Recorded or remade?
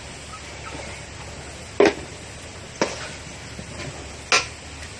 recorded